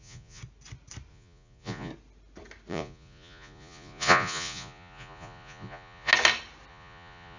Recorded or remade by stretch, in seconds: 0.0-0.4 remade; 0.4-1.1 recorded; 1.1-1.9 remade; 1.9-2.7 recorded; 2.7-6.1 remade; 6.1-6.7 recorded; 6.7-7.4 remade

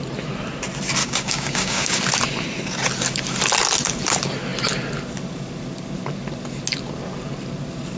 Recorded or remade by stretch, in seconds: 0.0-1.0 recorded; 1.0-2.0 remade; 2.0-8.0 recorded

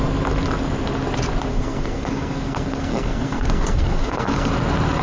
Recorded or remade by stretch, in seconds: 0.0-1.5 recorded; 1.5-4.5 remade; 4.5-5.0 recorded

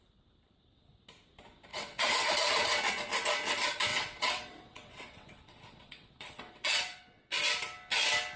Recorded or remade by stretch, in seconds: 0.0-1.7 recorded; 1.7-2.3 remade; 2.3-3.9 recorded; 3.9-7.3 remade; 7.3-8.4 recorded

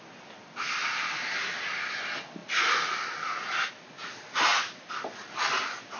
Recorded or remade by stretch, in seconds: 0.0-6.0 recorded

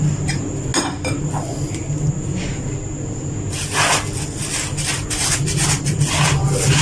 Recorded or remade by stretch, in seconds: 0.0-6.8 recorded

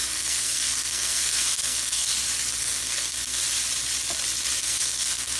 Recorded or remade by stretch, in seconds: 0.0-2.1 remade; 2.1-2.6 recorded; 2.6-3.4 remade; 3.4-4.6 recorded; 4.6-5.4 remade